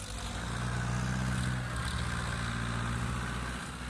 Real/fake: real